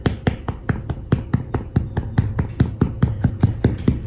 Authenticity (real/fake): real